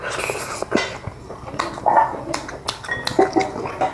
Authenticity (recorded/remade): recorded